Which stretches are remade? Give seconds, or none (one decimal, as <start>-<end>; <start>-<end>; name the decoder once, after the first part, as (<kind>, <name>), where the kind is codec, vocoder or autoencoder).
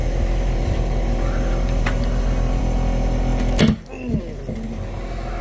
0.0-2.6 (vocoder, BigVGAN v2)